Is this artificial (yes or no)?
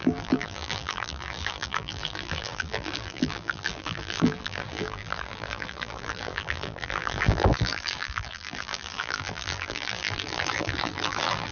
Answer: yes